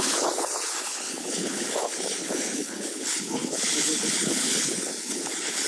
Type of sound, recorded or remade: remade